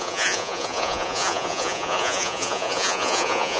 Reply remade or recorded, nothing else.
remade